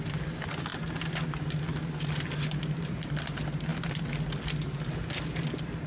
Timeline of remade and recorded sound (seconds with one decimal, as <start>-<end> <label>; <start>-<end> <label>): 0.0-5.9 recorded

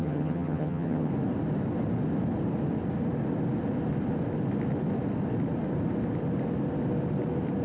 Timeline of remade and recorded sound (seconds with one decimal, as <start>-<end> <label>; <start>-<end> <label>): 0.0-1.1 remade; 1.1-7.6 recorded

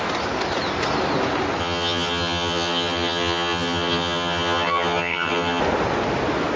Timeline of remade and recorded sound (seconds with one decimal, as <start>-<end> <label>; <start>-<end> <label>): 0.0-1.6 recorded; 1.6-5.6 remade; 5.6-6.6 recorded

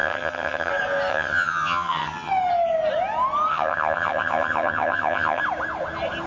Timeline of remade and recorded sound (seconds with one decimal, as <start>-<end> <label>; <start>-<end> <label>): 0.0-0.7 remade; 0.7-1.1 recorded; 1.1-2.3 remade; 2.3-3.5 recorded; 3.5-5.4 remade; 5.4-6.3 recorded